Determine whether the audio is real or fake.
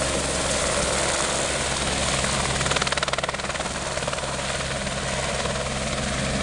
real